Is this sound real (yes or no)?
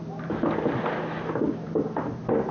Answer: yes